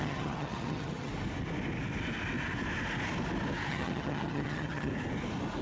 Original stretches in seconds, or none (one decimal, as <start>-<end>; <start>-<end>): 1.1-3.7; 4.9-5.6